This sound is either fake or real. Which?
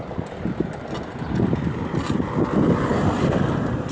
real